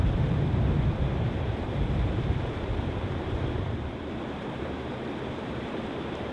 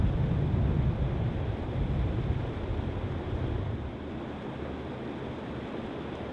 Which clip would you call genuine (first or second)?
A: second